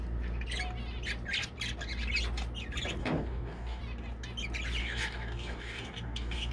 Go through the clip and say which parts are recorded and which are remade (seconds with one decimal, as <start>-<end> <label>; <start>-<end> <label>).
0.0-3.0 recorded; 3.0-3.8 remade; 3.8-4.8 recorded; 4.8-6.5 remade